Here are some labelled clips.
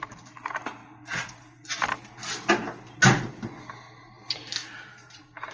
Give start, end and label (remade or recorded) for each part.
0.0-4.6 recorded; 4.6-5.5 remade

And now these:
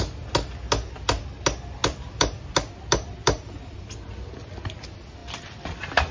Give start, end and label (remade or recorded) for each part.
0.0-1.8 recorded; 1.8-2.5 remade; 2.5-5.2 recorded; 5.2-6.1 remade

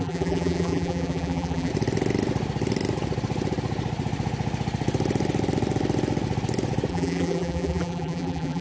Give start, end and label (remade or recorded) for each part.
0.0-1.7 remade; 1.7-6.9 recorded; 6.9-8.6 remade

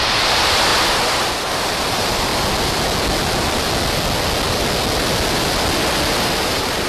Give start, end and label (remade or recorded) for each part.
0.0-0.7 remade; 0.7-1.4 recorded; 1.4-2.3 remade; 2.3-6.4 recorded; 6.4-6.9 remade

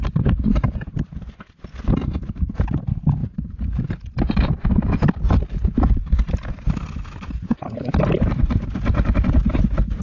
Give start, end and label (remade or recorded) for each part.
0.0-3.2 recorded; 3.2-7.9 remade; 7.9-10.0 recorded

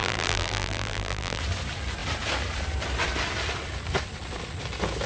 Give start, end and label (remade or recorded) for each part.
0.0-1.4 remade; 1.4-5.1 recorded